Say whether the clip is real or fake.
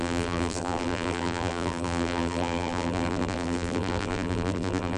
fake